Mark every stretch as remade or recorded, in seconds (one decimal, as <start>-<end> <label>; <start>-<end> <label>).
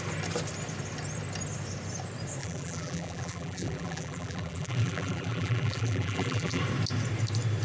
0.0-2.4 recorded; 2.4-6.6 remade; 6.6-7.6 recorded